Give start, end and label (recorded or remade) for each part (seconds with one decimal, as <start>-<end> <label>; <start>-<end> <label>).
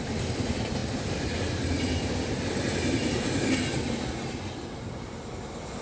0.0-0.8 remade; 0.8-4.3 recorded; 4.3-5.8 remade